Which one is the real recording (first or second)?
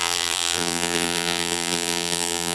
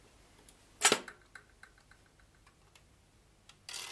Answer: second